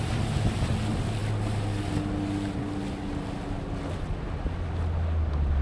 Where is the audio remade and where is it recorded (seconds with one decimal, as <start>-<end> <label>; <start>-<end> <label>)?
0.0-5.6 recorded

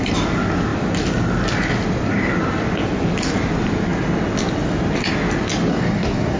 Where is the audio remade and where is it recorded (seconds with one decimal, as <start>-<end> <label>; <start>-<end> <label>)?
0.0-5.7 recorded; 5.7-6.4 remade

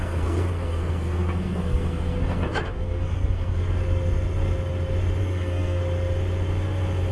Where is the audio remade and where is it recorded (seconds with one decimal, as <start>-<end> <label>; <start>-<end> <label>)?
0.0-3.6 remade; 3.6-5.2 recorded; 5.2-5.8 remade; 5.8-7.1 recorded

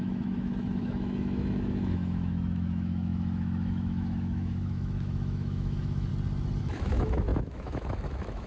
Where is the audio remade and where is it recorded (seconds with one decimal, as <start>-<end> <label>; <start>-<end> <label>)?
0.0-6.1 remade; 6.1-6.6 recorded; 6.6-8.5 remade

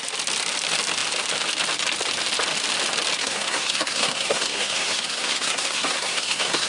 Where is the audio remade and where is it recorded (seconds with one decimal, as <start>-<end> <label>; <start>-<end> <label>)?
0.0-3.2 recorded; 3.2-6.7 remade

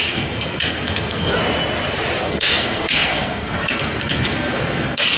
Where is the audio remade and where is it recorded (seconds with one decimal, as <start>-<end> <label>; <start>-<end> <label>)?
0.0-1.4 remade; 1.4-2.2 recorded; 2.2-5.2 remade